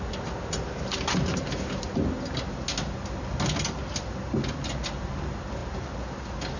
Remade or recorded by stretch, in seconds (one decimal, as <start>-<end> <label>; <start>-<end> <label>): 0.0-6.6 recorded